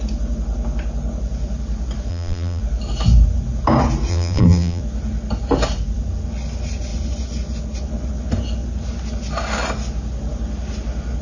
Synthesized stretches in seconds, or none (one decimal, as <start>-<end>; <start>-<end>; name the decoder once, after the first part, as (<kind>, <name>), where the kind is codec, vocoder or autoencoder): 2.1-2.6 (vocoder, BigVGAN v2); 4.1-4.8